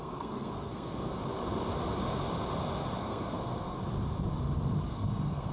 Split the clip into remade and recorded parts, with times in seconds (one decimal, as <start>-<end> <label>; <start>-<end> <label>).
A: 0.0-1.2 remade; 1.2-3.0 recorded; 3.0-3.8 remade; 3.8-4.8 recorded; 4.8-5.5 remade